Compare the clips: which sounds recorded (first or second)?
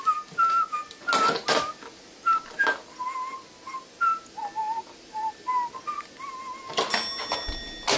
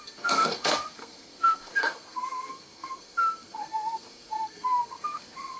first